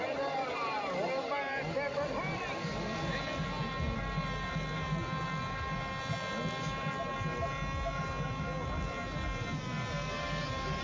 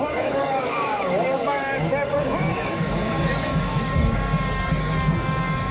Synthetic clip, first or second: second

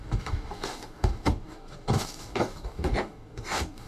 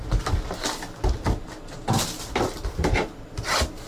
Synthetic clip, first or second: first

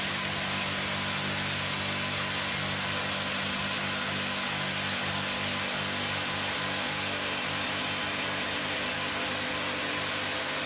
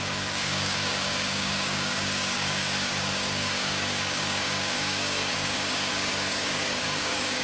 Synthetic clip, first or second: second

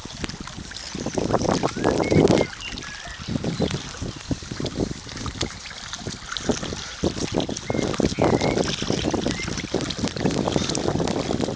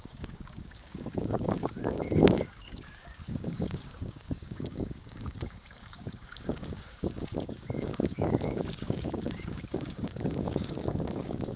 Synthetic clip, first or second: second